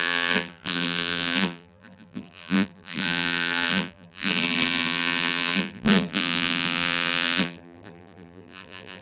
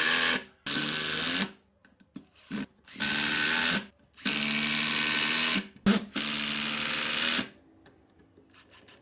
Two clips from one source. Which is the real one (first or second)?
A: second